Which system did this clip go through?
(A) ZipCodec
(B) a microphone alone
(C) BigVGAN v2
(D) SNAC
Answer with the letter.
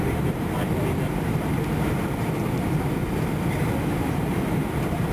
C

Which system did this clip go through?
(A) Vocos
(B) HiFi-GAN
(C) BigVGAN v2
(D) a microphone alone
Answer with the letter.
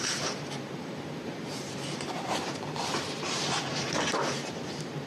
C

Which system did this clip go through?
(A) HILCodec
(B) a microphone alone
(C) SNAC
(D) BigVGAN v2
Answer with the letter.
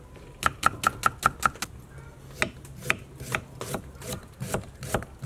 B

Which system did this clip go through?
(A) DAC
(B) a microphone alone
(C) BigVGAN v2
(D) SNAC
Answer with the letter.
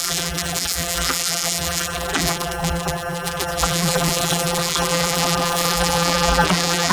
C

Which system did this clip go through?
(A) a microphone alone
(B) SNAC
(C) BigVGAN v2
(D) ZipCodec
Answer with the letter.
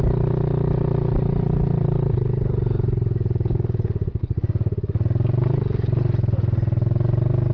A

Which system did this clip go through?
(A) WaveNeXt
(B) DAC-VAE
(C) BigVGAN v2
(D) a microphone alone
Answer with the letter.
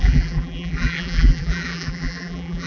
C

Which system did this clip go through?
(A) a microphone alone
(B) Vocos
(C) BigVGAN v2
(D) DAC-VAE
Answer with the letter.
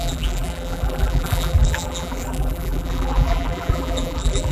C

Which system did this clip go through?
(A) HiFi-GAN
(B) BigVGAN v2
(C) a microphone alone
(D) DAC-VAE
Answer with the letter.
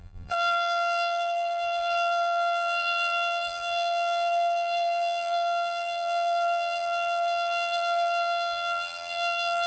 B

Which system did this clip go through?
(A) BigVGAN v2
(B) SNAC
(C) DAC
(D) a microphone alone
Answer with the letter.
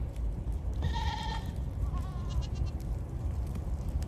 A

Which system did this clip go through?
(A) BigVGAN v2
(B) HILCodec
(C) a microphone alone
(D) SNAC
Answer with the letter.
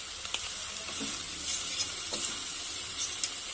C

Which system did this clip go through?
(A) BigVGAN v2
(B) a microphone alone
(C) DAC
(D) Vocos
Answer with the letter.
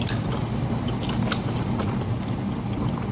B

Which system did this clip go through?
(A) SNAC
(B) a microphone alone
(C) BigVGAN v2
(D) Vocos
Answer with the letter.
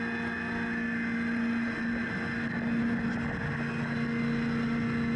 B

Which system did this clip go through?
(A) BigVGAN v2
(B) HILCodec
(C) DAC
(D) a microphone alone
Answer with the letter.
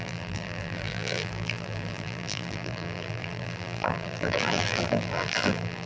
A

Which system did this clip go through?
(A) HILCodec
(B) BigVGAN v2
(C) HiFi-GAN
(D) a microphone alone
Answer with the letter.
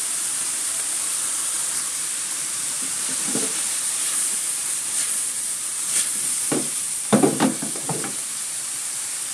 B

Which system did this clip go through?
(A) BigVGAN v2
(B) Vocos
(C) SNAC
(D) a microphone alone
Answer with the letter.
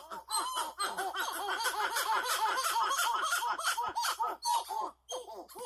D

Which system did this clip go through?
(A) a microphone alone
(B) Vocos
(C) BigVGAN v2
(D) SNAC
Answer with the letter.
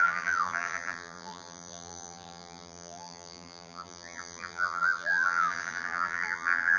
C